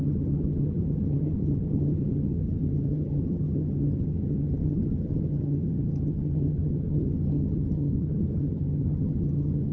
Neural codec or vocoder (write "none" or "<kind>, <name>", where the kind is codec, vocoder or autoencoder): vocoder, HiFi-GAN